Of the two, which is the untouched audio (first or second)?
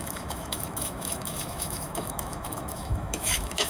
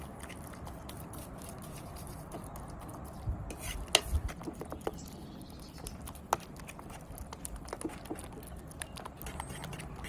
second